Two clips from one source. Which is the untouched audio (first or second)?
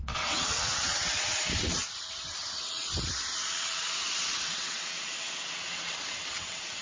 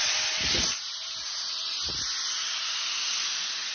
second